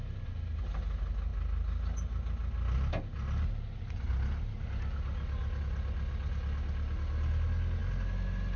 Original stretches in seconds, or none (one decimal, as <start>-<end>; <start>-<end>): 0.0-8.6